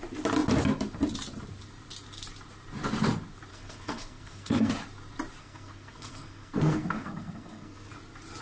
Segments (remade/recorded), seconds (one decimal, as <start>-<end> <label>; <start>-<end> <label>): 0.0-3.5 recorded; 3.5-4.7 remade; 4.7-5.4 recorded; 5.4-7.9 remade; 7.9-8.4 recorded